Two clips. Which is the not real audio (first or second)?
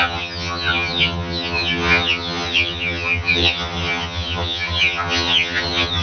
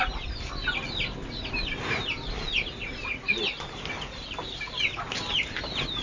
first